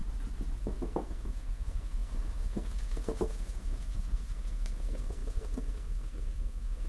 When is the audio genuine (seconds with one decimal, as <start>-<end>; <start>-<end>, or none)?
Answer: 0.0-0.6